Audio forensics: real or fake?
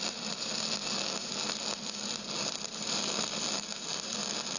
real